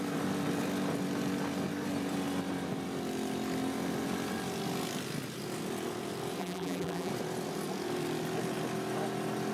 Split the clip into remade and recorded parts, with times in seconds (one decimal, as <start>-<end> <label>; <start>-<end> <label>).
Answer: 0.0-6.4 recorded; 6.4-7.1 remade; 7.1-9.5 recorded